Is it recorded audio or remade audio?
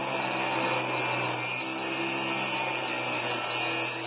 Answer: recorded